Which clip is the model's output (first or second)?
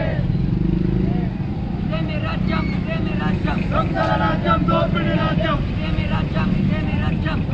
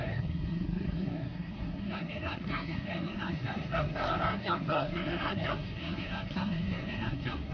second